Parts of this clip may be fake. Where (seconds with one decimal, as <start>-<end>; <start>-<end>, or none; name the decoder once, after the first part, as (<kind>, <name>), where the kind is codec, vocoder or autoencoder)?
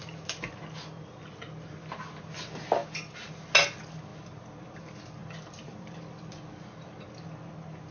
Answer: 4.1-4.8 (vocoder, BigVGAN v2); 5.2-6.5